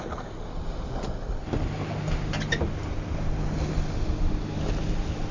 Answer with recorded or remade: recorded